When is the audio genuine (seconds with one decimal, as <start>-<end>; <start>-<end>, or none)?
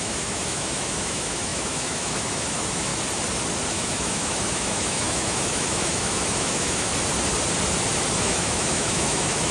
2.9-3.7; 6.9-8.2